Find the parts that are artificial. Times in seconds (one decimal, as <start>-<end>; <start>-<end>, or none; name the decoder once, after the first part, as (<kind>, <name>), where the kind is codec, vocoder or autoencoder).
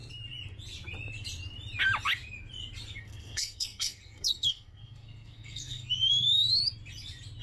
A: 3.0-6.6 (codec, SNAC)